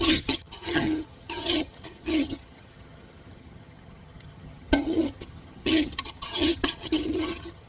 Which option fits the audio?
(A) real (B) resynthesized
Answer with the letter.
B